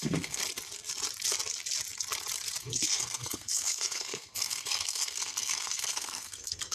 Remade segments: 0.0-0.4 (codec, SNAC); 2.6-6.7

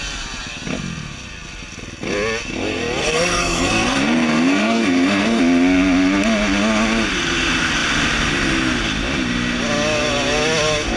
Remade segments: 3.0-5.4 (codec, SNAC)

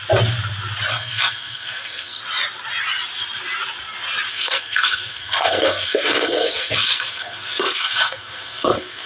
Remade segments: 0.9-2.2 (codec, SNAC); 4.3-9.1

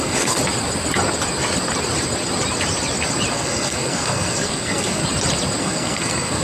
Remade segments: 0.0-0.4 (codec, SNAC); 3.3-5.0; 5.6-6.4